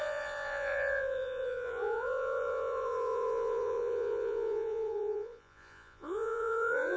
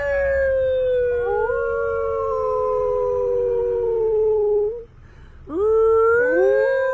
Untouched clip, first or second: second